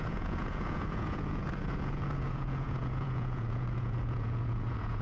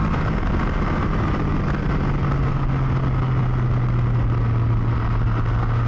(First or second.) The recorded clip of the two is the second